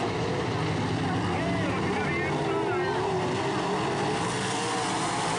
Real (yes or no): yes